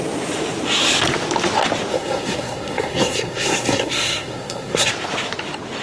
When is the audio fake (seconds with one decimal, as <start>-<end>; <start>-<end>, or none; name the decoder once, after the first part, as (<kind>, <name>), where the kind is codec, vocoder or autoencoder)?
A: 1.9-4.9 (codec, SNAC)